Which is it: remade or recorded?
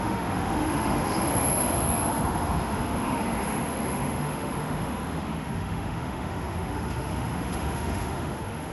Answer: remade